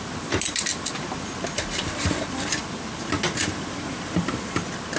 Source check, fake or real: fake